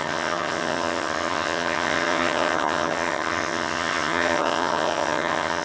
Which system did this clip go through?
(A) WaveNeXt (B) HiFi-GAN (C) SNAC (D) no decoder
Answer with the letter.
B